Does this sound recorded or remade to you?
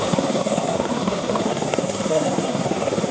remade